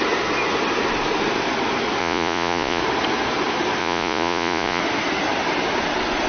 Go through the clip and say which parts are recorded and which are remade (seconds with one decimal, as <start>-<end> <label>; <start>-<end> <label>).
0.0-2.0 recorded; 2.0-2.8 remade; 2.8-3.8 recorded; 3.8-4.8 remade; 4.8-6.3 recorded